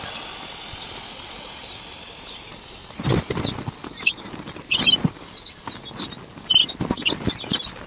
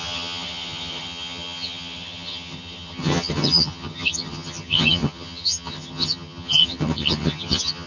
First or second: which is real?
first